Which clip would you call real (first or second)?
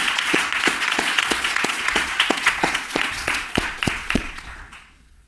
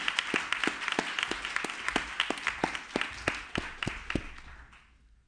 second